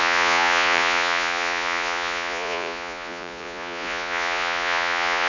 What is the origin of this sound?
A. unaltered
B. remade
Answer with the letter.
B